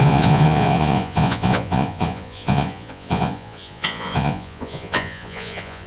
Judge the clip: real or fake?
fake